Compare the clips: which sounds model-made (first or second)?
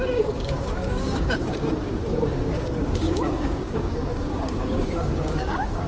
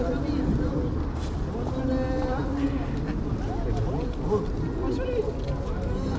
first